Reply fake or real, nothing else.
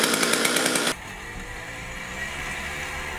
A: real